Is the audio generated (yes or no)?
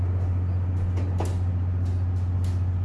no